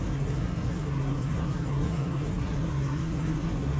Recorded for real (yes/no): no